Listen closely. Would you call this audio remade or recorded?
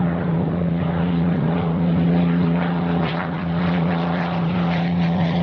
remade